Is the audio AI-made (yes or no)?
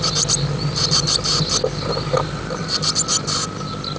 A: no